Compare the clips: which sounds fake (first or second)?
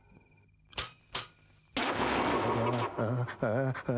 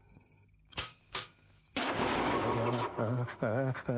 second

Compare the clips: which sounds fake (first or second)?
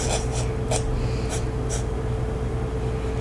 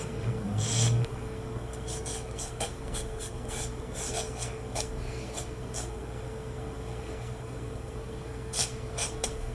second